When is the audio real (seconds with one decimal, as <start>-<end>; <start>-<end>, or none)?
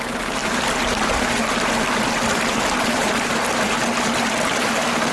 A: 0.0-5.1